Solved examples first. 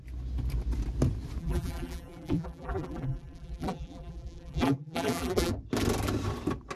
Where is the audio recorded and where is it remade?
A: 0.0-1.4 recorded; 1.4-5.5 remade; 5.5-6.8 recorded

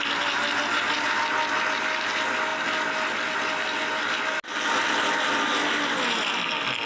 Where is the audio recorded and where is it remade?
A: 0.0-6.9 recorded

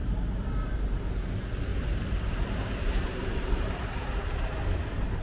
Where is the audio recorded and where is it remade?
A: 0.0-1.0 remade; 1.0-1.7 recorded; 1.7-4.8 remade; 4.8-5.2 recorded

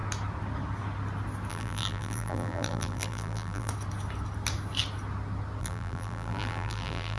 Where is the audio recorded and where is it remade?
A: 0.0-1.5 recorded; 1.5-3.7 remade; 3.7-5.6 recorded; 5.6-7.2 remade

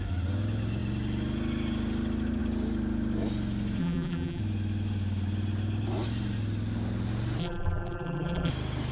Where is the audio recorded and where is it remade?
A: 0.0-3.8 recorded; 3.8-4.4 remade; 4.4-7.4 recorded; 7.4-8.5 remade; 8.5-8.9 recorded